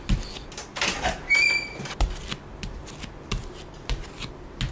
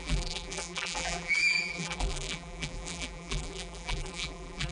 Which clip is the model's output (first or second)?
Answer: second